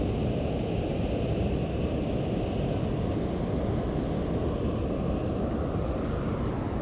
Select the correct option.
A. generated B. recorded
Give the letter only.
B